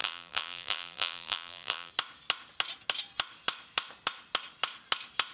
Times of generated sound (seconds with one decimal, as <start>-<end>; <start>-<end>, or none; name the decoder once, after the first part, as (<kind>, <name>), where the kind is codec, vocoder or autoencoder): 0.0-1.9 (vocoder, BigVGAN v2)